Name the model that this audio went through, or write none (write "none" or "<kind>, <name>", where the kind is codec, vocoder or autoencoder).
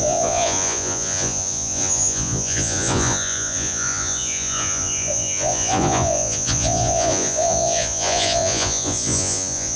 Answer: vocoder, Vocos